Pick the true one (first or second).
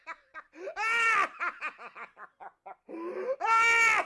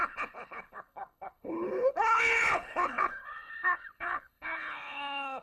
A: first